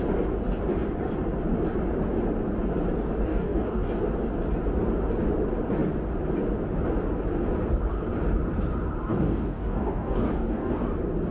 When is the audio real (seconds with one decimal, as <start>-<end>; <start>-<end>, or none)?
0.0-3.3; 3.9-9.1; 10.7-11.3